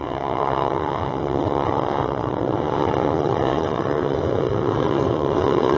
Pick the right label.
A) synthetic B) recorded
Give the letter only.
A